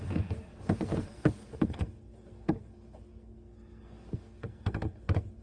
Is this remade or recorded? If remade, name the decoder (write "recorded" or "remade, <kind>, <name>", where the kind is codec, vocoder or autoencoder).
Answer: remade, codec, SNAC